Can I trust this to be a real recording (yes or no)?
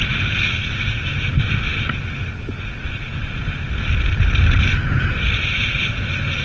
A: yes